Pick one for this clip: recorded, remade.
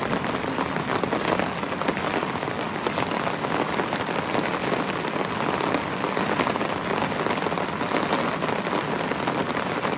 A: recorded